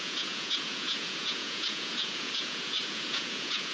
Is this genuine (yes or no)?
no